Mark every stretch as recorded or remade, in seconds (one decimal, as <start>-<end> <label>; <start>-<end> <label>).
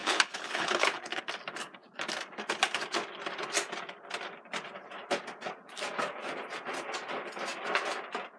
0.0-1.2 remade; 1.2-8.4 recorded